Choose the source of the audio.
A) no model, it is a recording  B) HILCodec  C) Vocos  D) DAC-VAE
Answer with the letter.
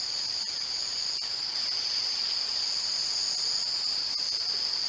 A